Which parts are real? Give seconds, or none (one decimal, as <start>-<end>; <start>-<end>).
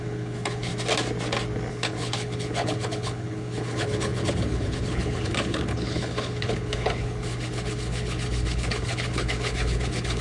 0.7-1.7